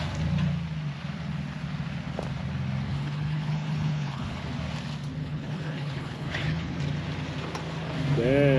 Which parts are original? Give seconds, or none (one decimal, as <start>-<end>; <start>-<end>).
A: 0.0-2.9; 4.4-5.2; 6.8-8.6